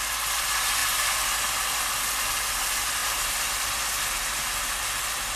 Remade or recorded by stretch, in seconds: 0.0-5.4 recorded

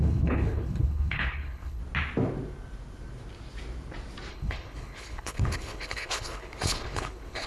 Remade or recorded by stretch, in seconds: 0.0-1.8 remade; 1.8-4.3 recorded; 4.3-7.5 remade

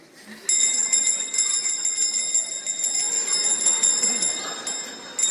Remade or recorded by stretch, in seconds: 0.0-5.3 recorded

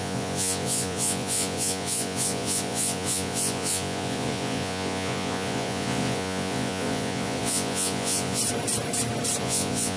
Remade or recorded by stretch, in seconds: 0.0-8.4 remade; 8.4-9.4 recorded; 9.4-10.0 remade

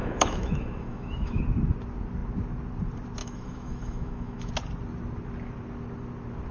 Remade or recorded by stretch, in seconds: 0.0-1.4 remade; 1.4-3.2 recorded; 3.2-4.5 remade; 4.5-6.5 recorded

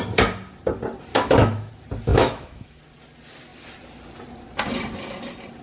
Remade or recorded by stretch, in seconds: 0.0-1.1 recorded; 1.1-1.7 remade; 1.7-2.1 recorded; 2.1-2.8 remade; 2.8-5.6 recorded